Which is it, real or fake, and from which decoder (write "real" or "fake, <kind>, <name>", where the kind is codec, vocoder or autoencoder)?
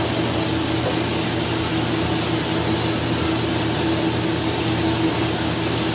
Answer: real